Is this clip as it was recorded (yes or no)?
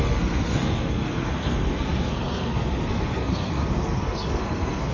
no